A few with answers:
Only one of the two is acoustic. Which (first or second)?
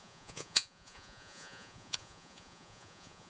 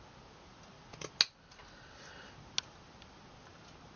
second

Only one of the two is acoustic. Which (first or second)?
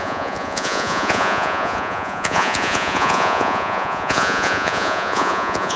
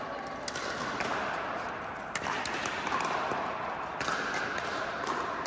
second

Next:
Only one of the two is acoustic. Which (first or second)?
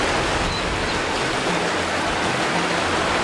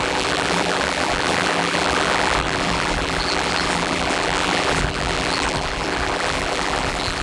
first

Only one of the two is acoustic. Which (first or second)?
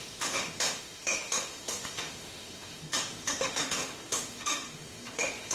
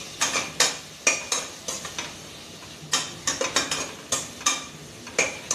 second